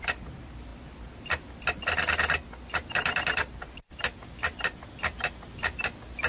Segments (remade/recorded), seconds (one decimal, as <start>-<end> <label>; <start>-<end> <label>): 0.0-6.3 recorded